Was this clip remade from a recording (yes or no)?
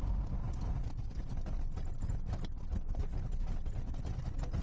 no